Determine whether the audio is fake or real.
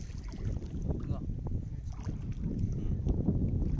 real